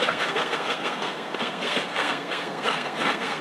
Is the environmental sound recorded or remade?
remade